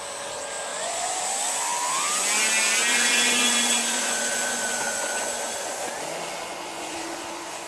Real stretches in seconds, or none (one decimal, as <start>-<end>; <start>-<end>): 0.0-0.7; 1.2-2.9; 5.9-6.5